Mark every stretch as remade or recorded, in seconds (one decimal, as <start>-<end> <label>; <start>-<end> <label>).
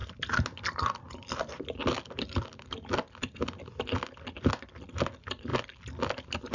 0.0-6.5 recorded